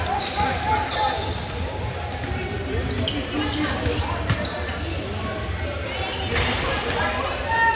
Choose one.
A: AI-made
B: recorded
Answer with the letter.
B